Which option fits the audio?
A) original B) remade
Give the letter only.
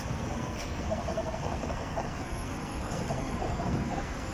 B